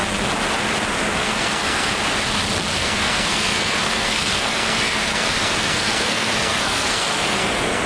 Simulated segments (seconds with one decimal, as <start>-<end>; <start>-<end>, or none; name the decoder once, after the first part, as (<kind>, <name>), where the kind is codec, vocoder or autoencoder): 1.1-1.9 (codec, SNAC); 2.7-7.9